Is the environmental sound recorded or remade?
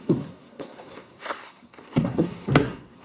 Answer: remade